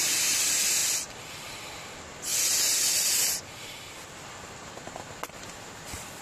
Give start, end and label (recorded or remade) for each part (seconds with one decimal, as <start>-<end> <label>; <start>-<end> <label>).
0.0-0.8 recorded; 0.8-1.5 remade; 1.5-6.2 recorded